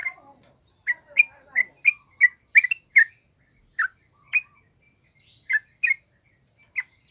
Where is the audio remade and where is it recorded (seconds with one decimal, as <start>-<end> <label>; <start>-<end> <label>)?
0.0-7.1 recorded

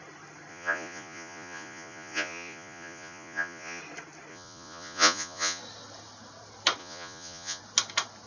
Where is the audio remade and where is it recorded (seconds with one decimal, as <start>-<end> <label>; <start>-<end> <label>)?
0.0-0.5 recorded; 0.5-3.8 remade; 3.8-4.3 recorded; 4.3-5.6 remade; 5.6-6.8 recorded; 6.8-7.6 remade; 7.6-8.3 recorded

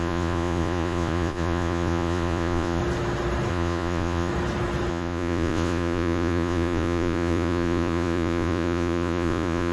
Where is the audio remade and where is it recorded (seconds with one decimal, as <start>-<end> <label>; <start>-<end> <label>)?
0.0-2.8 remade; 2.8-3.5 recorded; 3.5-4.3 remade; 4.3-4.9 recorded; 4.9-9.7 remade

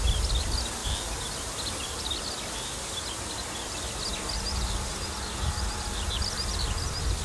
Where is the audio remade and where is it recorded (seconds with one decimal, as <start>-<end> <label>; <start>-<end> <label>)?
0.0-7.2 recorded

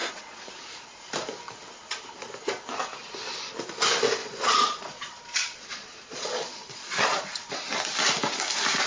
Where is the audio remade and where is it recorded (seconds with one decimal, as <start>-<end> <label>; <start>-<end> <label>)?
0.0-0.5 remade; 0.5-4.2 recorded; 4.2-7.5 remade; 7.5-8.9 recorded

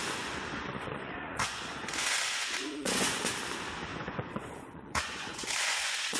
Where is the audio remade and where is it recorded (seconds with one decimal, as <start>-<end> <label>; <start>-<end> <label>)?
0.0-3.3 remade; 3.3-3.9 recorded; 3.9-6.2 remade

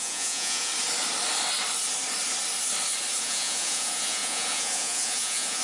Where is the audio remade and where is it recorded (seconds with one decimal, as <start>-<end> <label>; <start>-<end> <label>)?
0.0-0.7 remade; 0.7-3.2 recorded; 3.2-5.6 remade